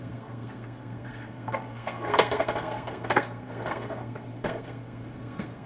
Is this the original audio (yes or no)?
no